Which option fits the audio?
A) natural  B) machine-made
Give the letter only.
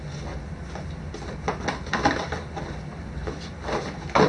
A